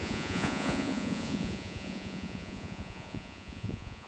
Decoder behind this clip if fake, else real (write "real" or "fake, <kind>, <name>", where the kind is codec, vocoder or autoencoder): fake, vocoder, Vocos